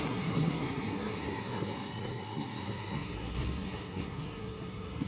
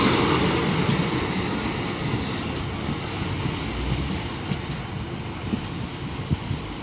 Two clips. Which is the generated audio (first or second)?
first